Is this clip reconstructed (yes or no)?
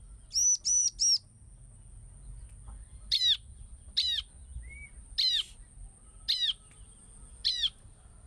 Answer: no